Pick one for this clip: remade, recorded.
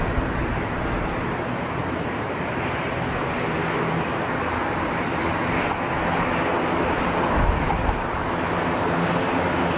recorded